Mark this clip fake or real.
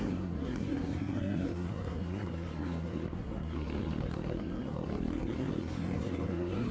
fake